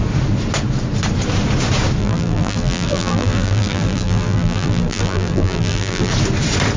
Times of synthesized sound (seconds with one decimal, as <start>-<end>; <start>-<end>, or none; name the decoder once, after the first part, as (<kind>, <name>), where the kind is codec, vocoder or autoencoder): 2.0-6.1 (vocoder, BigVGAN v2)